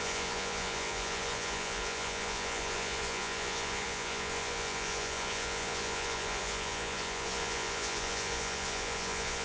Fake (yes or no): yes